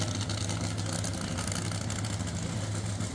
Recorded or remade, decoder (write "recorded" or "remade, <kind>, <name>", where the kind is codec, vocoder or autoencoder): recorded